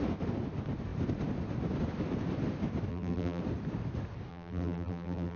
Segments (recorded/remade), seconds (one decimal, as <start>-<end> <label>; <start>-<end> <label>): 0.0-2.9 recorded; 2.9-3.4 remade; 3.4-4.3 recorded; 4.3-5.4 remade